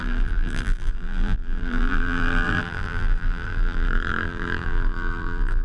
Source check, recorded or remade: remade